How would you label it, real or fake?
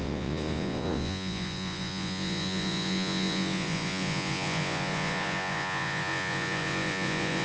fake